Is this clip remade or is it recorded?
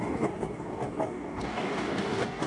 remade